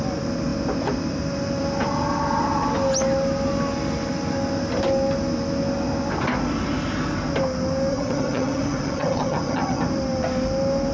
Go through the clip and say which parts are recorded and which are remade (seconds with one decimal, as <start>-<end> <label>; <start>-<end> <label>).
0.0-7.9 recorded; 7.9-9.8 remade; 9.8-10.9 recorded